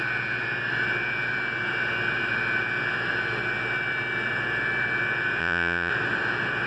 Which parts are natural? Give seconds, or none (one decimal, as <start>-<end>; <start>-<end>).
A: 0.0-5.4; 5.9-6.7